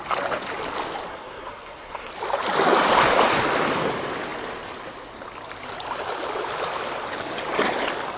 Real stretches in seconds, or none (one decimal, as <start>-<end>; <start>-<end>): 0.0-1.1; 2.1-8.2